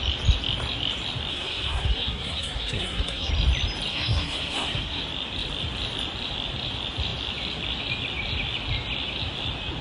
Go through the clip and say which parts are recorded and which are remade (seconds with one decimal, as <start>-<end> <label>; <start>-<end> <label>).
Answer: 0.0-1.3 recorded; 1.3-3.3 remade; 3.3-3.9 recorded; 3.9-5.0 remade; 5.0-9.8 recorded